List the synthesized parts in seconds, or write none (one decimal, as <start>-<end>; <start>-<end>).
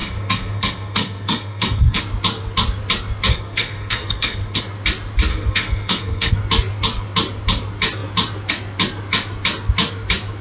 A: 0.0-2.0; 3.3-4.6; 5.3-6.3